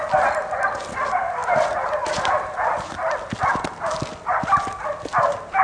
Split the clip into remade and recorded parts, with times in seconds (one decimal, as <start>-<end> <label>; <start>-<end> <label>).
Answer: 0.0-1.4 recorded; 1.4-2.8 remade; 2.8-5.6 recorded